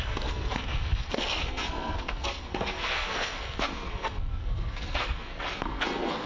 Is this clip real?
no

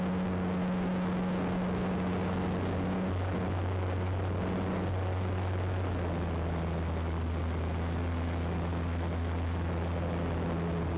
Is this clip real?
yes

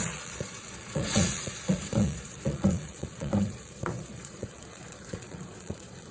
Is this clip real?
no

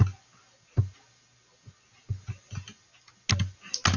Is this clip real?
yes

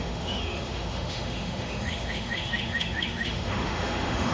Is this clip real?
no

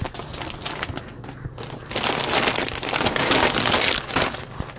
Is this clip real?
yes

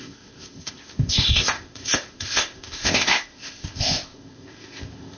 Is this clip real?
no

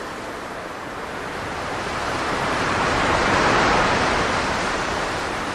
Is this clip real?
no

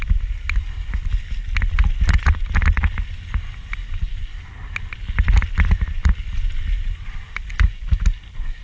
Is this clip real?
yes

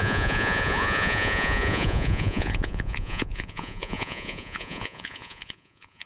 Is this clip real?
no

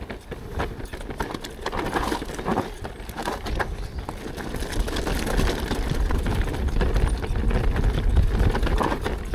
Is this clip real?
yes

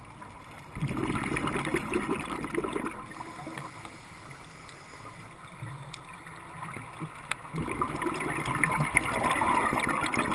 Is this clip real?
yes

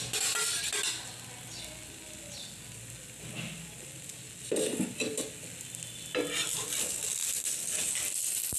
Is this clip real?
yes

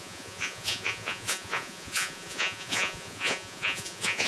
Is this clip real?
no